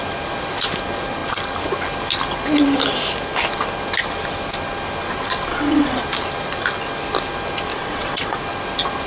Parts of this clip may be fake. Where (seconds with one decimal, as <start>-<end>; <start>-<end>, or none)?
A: 5.5-6.0; 7.7-8.4